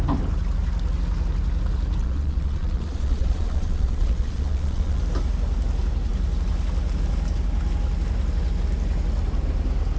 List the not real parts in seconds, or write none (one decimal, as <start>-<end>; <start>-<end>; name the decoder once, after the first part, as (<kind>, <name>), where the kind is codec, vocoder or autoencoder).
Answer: 2.0-5.0 (vocoder, Vocos)